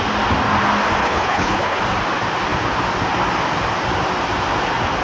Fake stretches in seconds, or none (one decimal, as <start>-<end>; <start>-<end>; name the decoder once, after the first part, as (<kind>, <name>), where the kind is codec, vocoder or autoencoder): 1.0-1.8 (codec, HILCodec)